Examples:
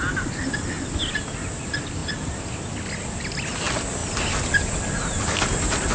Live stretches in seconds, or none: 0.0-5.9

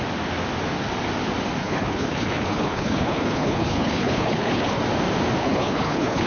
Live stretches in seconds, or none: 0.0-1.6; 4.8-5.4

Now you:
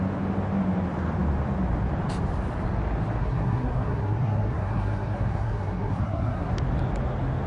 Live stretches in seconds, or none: 0.0-3.2; 6.5-7.5

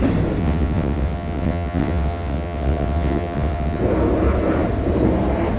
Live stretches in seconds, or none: 0.0-0.4; 3.8-5.6

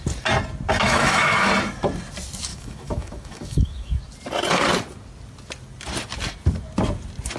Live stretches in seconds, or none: 0.0-0.8; 1.5-2.5; 4.0-7.4

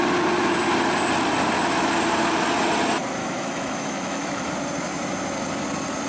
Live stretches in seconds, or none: 0.0-3.2; 4.5-6.1

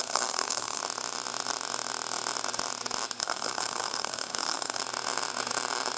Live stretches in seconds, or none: 0.8-3.2; 4.8-6.0

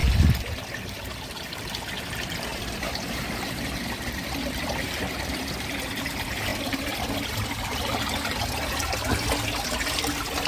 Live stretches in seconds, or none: 0.0-2.5; 5.0-6.5; 8.4-10.5